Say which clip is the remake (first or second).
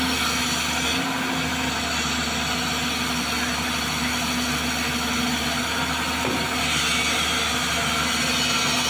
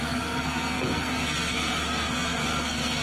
second